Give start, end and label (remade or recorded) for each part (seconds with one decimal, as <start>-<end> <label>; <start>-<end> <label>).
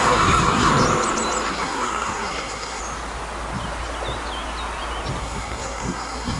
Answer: 0.0-0.7 remade; 0.7-1.5 recorded; 1.5-2.8 remade; 2.8-5.2 recorded; 5.2-6.4 remade